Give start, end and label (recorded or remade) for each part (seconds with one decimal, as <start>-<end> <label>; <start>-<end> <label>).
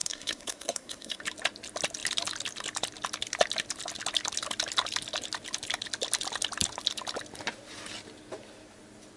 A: 0.0-1.2 remade; 1.2-9.2 recorded